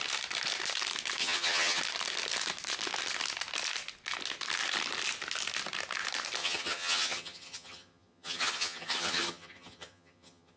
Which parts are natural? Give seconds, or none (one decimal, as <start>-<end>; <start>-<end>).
0.0-1.2; 1.8-6.4